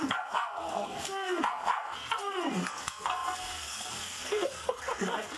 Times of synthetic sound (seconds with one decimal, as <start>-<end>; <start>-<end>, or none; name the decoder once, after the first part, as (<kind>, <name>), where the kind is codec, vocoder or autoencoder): 0.0-5.4 (codec, SNAC)